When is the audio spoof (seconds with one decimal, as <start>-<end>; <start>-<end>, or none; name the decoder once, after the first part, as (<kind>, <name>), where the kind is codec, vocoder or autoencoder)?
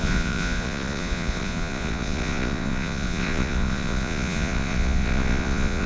0.0-5.9 (vocoder, Vocos)